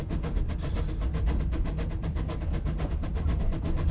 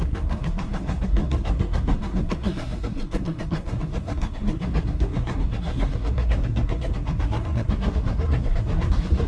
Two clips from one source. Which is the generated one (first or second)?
second